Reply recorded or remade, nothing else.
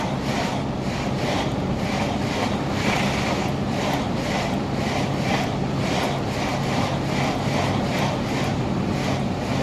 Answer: recorded